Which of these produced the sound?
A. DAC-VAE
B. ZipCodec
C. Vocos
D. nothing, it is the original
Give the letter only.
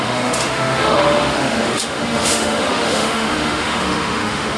A